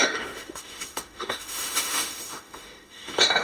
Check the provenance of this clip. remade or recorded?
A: remade